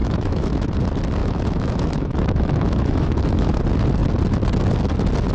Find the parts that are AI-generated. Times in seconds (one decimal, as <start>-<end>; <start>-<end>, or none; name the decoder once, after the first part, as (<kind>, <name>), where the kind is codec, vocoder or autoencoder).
0.0-0.7 (autoencoder, DAC-VAE); 1.2-3.6